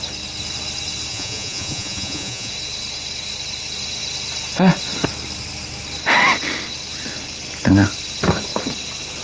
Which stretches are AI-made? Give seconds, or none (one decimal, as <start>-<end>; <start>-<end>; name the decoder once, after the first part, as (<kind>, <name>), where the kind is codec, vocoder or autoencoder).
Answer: 1.1-2.5 (vocoder, Vocos)